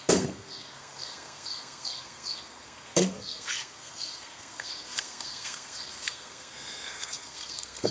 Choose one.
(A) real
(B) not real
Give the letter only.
B